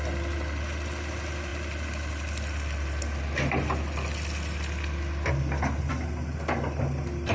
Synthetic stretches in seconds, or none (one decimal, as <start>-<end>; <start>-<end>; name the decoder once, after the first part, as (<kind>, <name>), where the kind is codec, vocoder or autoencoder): none